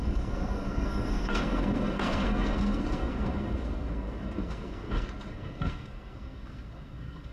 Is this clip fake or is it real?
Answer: fake